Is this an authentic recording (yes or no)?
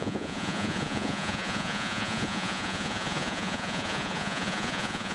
no